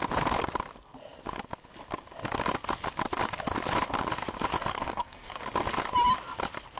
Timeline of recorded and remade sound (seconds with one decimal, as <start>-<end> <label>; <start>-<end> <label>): 0.0-4.7 recorded; 4.7-5.4 remade; 5.4-6.8 recorded